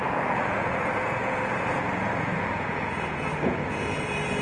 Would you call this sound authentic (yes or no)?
no